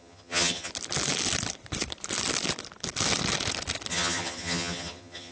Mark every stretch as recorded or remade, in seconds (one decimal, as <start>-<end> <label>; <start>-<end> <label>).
0.0-0.7 remade; 0.7-3.9 recorded; 3.9-5.3 remade